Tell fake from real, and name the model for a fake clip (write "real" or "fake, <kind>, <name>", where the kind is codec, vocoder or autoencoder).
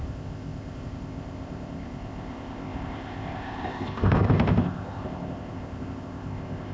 fake, codec, ZipCodec